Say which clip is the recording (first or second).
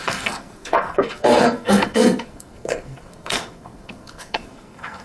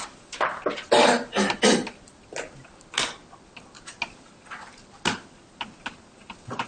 second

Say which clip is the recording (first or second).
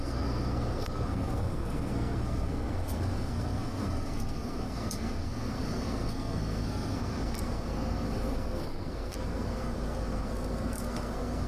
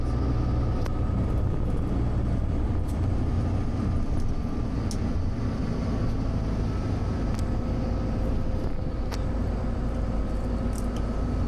second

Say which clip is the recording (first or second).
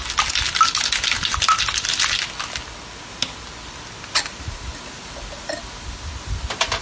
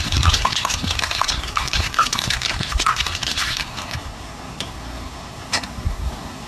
first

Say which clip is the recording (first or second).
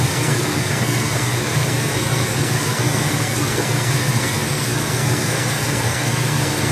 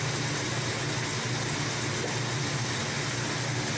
second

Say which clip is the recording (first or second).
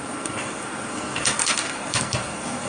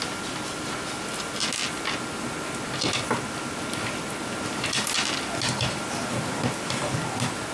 second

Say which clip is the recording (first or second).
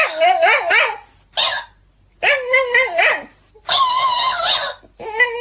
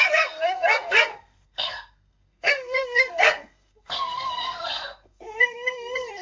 first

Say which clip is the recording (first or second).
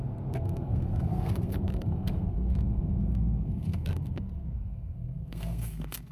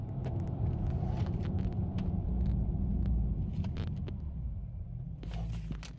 second